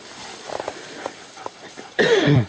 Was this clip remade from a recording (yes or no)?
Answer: yes